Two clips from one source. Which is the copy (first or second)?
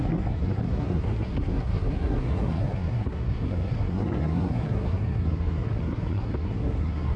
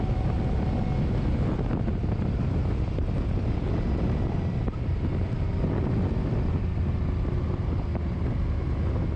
first